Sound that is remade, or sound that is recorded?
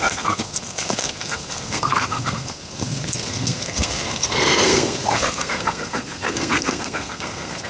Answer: remade